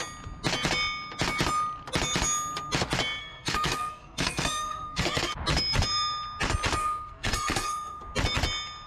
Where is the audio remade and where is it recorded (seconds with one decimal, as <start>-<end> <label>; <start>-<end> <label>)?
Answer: 0.0-3.2 recorded; 3.2-5.3 remade; 5.3-6.8 recorded; 6.8-8.0 remade; 8.0-8.9 recorded